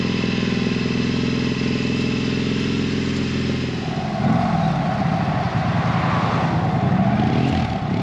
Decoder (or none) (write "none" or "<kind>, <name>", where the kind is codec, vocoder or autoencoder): none